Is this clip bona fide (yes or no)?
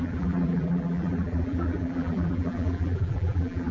no